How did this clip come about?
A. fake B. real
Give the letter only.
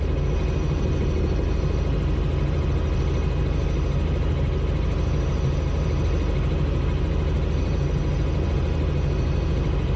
B